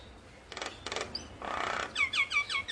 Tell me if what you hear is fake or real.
real